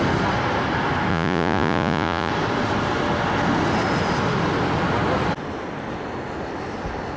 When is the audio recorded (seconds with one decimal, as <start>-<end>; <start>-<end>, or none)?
0.0-1.1; 2.3-7.2